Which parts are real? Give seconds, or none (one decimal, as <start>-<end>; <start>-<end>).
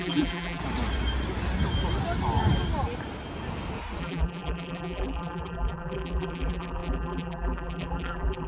0.6-4.0